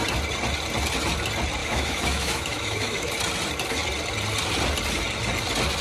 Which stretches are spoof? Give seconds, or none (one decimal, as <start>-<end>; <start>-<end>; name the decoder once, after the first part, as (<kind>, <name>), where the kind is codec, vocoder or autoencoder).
1.6-3.1 (autoencoder, DAC-VAE)